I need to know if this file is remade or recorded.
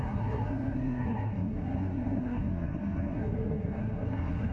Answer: remade